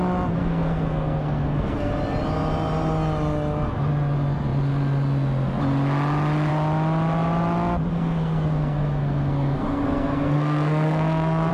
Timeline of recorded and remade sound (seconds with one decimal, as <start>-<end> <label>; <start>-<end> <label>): 0.0-0.4 recorded; 0.4-1.9 remade; 1.9-7.9 recorded; 7.9-11.5 remade